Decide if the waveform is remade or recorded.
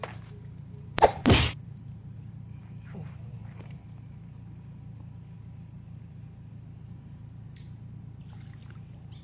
recorded